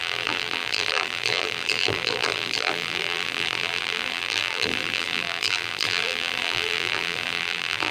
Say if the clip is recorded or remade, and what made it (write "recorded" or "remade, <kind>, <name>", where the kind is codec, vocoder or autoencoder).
remade, vocoder, BigVGAN v2